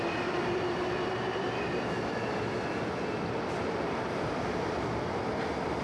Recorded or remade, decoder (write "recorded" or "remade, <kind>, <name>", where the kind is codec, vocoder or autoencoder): remade, vocoder, BigVGAN v2